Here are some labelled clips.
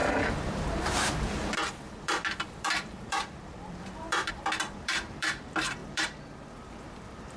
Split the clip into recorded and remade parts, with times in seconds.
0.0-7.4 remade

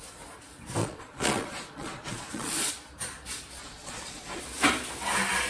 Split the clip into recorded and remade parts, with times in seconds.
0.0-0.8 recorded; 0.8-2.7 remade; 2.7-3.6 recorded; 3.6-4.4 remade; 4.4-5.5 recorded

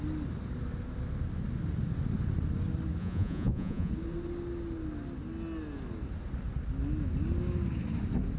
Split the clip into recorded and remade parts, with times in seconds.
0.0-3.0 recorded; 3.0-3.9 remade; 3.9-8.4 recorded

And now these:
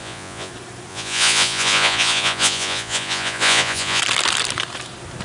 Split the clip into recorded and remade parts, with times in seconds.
0.0-0.5 remade; 0.5-0.9 recorded; 0.9-4.0 remade; 4.0-5.2 recorded

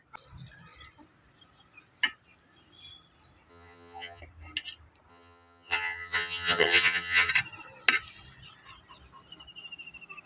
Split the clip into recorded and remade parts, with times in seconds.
0.0-3.5 recorded; 3.5-4.2 remade; 4.2-5.1 recorded; 5.1-7.3 remade; 7.3-10.3 recorded